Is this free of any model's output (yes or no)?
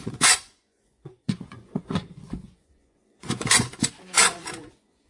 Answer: no